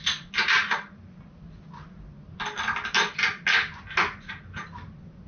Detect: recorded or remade recorded